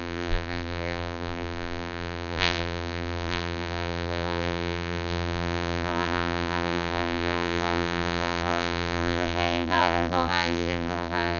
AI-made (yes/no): yes